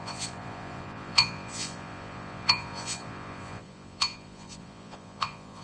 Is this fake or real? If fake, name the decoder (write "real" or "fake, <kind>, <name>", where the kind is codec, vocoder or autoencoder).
fake, vocoder, Vocos